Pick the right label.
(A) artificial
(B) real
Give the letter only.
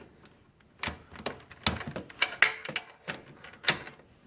B